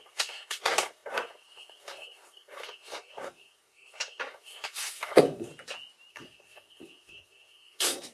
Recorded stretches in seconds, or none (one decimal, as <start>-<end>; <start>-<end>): 5.5-6.1